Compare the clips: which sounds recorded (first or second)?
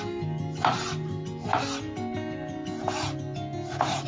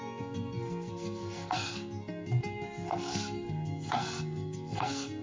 first